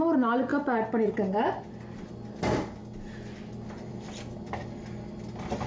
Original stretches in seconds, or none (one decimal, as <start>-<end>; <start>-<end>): 0.0-5.7